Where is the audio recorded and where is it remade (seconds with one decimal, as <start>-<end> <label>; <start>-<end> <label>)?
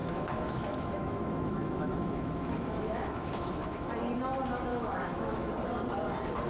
0.0-3.9 remade; 3.9-4.7 recorded; 4.7-5.5 remade; 5.5-6.5 recorded